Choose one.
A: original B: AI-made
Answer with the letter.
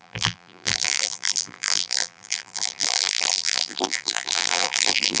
B